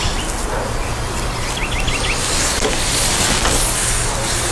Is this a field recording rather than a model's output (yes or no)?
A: yes